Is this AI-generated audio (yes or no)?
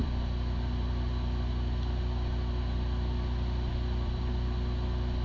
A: yes